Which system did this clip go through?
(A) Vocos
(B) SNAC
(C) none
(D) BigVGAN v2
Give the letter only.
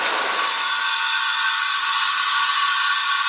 C